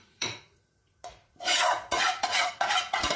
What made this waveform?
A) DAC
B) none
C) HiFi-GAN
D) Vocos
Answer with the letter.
D